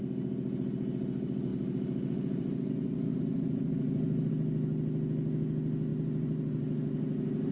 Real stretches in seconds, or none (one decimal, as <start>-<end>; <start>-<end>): 0.0-1.5; 2.7-3.1; 4.3-5.9

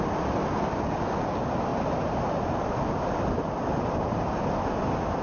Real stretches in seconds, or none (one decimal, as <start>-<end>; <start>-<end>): 0.0-1.7; 4.8-5.2

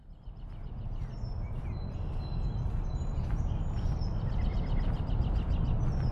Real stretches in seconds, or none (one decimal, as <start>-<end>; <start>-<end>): 0.0-6.1